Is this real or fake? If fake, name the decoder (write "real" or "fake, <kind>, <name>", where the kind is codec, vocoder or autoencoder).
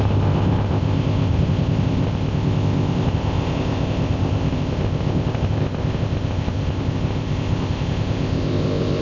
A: fake, codec, ZipCodec